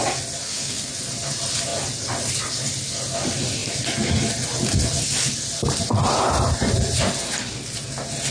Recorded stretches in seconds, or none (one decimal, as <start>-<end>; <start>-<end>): 0.0-0.4; 0.9-8.3